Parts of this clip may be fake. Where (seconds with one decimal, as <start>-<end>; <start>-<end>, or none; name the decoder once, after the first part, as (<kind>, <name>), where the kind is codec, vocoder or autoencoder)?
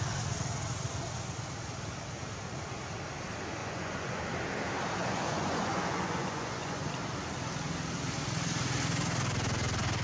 3.6-4.2 (vocoder, Vocos); 5.0-6.9